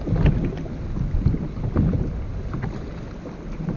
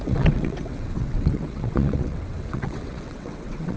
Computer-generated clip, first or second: second